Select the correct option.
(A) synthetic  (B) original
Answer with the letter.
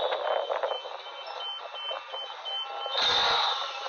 B